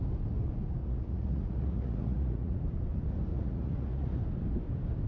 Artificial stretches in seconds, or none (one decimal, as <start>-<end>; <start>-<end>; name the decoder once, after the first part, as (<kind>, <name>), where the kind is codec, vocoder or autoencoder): 0.8-2.6 (vocoder, Vocos); 3.3-4.2